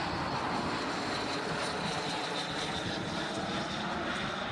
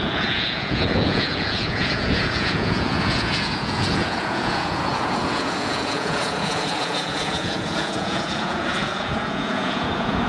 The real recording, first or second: first